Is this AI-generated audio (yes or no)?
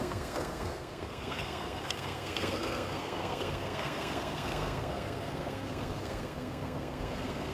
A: yes